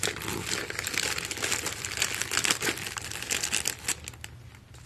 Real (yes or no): yes